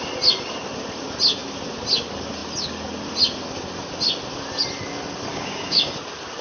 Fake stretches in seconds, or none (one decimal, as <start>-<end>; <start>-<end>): 5.3-5.9